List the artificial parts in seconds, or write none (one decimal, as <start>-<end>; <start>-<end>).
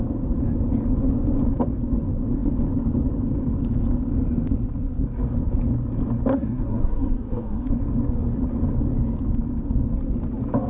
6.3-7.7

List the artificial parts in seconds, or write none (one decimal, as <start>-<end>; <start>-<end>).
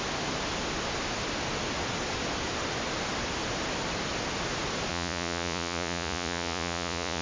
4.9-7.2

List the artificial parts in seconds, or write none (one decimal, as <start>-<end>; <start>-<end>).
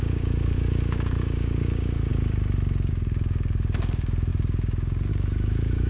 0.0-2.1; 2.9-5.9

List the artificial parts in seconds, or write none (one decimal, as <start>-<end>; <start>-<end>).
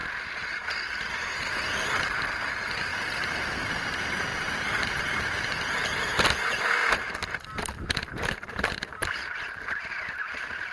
0.0-2.9; 3.6-10.7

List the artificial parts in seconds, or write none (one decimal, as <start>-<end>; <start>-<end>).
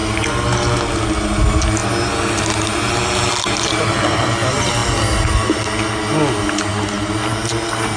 none